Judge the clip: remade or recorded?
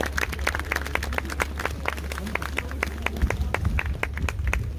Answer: recorded